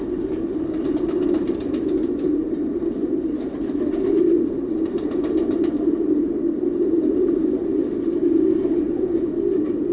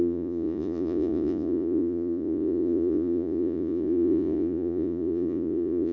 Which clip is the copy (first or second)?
second